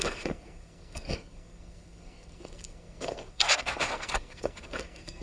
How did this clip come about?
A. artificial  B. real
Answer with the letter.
A